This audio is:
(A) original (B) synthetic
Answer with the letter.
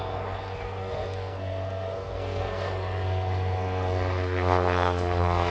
B